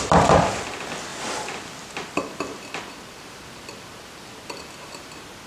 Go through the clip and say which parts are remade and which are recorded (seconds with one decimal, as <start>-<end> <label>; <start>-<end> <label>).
0.0-5.5 recorded